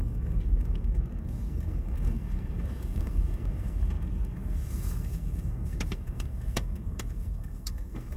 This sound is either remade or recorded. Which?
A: remade